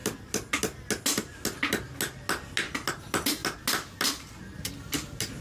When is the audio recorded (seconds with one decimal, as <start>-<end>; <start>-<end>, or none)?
0.0-5.4